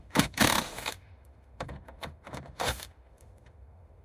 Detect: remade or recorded remade